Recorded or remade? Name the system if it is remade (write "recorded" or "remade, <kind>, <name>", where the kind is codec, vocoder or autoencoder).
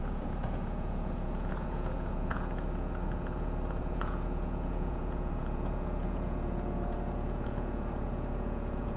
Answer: remade, vocoder, Vocos